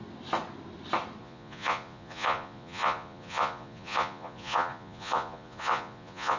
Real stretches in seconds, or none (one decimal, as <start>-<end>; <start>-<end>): 0.0-1.2